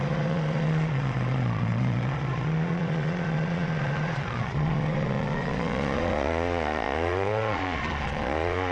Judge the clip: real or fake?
fake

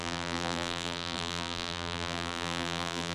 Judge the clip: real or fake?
fake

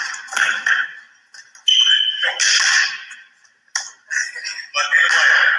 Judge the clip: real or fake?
real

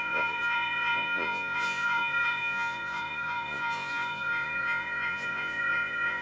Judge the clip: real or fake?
fake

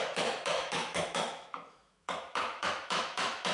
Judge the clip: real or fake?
fake